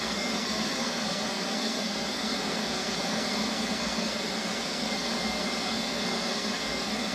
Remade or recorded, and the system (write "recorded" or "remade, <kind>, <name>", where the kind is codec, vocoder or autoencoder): remade, codec, SNAC